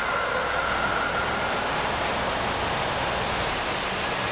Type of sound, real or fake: real